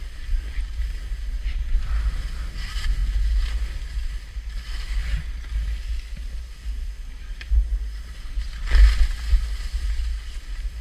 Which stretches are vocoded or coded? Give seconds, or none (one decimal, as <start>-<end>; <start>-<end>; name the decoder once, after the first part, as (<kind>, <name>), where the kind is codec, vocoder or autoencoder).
none